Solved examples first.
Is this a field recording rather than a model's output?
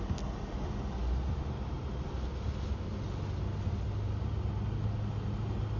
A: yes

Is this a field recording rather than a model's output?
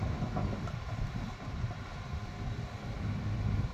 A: yes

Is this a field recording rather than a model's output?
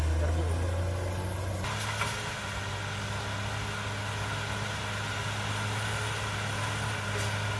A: yes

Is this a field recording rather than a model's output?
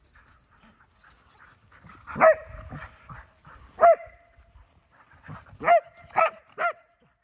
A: yes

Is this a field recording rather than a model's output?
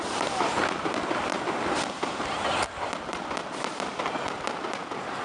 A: no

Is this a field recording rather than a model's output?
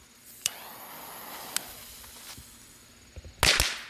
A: yes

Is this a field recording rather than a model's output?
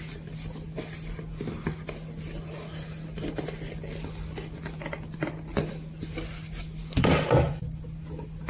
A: no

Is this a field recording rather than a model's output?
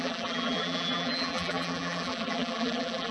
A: no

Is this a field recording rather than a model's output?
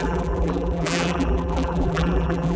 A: no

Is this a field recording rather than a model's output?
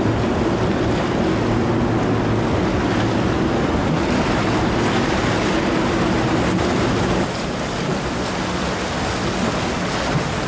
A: yes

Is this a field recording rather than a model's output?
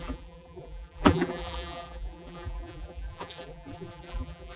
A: no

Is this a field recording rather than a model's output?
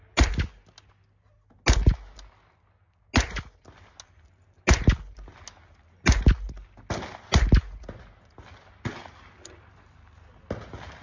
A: yes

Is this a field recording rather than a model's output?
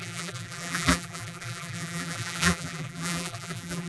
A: no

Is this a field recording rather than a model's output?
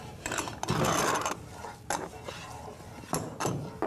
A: yes